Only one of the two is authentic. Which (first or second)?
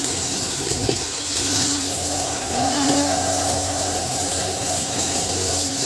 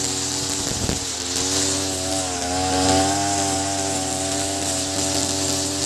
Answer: second